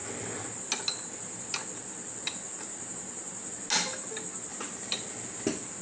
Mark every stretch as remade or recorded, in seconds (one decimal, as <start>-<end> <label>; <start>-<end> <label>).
0.0-4.5 recorded; 4.5-5.0 remade; 5.0-5.8 recorded